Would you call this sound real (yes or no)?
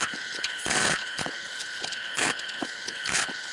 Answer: no